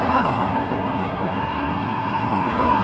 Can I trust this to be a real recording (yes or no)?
no